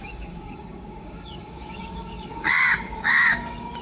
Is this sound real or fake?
fake